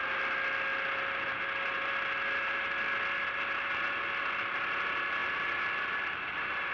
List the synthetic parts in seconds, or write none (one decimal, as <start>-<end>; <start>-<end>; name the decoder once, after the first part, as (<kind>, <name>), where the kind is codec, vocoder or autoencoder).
none